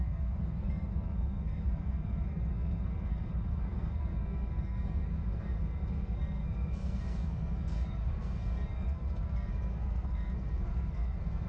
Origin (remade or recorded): remade